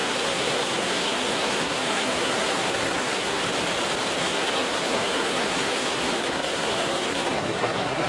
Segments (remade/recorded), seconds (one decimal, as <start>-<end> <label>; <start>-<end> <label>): 0.0-3.4 remade; 3.4-4.2 recorded; 4.2-8.1 remade